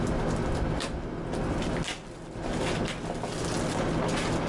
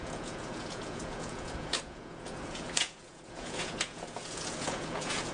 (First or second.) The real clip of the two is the first